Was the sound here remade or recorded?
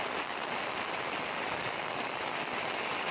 recorded